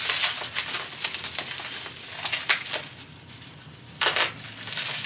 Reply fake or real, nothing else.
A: real